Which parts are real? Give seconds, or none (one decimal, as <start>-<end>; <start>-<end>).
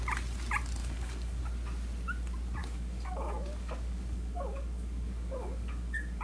0.0-0.8; 1.4-2.6